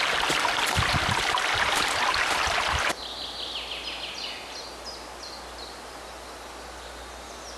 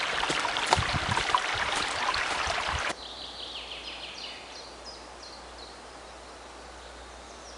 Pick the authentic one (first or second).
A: first